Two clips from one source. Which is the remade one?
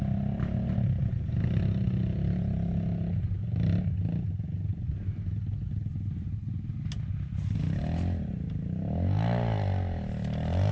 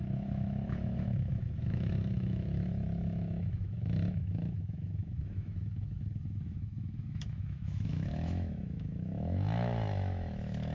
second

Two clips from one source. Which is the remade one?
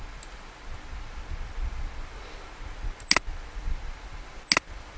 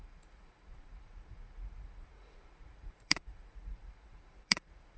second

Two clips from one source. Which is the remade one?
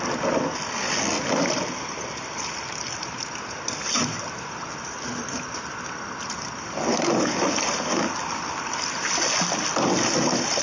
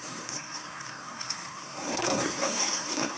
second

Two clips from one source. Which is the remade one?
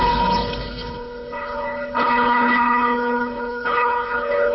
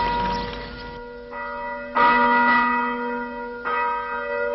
first